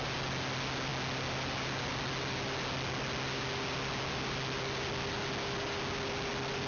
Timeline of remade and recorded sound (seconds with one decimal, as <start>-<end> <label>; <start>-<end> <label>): 0.0-6.7 recorded